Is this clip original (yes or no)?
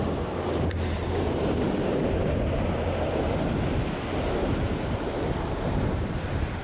no